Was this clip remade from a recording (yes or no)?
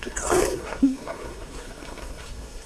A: yes